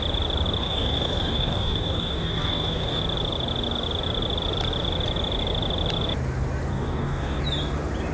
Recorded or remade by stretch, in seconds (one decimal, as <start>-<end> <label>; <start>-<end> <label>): 0.0-0.6 recorded; 0.6-3.0 remade; 3.0-6.7 recorded; 6.7-7.4 remade; 7.4-8.1 recorded